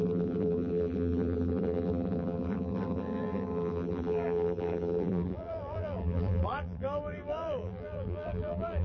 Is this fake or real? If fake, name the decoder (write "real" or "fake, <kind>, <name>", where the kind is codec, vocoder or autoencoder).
fake, vocoder, BigVGAN v2